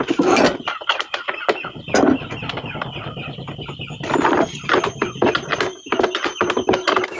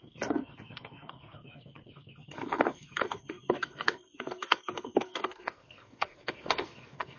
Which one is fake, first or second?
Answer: second